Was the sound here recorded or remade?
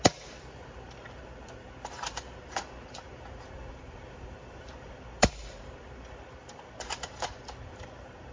remade